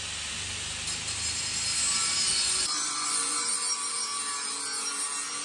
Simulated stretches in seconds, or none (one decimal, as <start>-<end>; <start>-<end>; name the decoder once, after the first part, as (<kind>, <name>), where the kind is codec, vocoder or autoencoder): 2.3-3.5 (vocoder, Vocos)